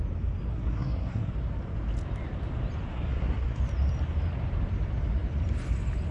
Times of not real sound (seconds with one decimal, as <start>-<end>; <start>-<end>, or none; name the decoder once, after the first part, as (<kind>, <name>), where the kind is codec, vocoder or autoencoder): 0.5-1.3 (codec, SNAC); 2.9-3.6